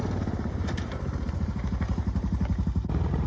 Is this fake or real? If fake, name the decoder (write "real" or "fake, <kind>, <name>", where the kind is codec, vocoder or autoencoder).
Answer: fake, vocoder, BigVGAN v2